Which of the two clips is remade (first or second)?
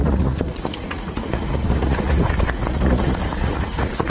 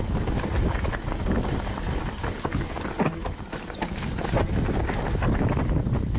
first